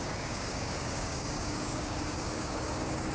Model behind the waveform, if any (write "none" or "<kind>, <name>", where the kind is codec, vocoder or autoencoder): codec, DAC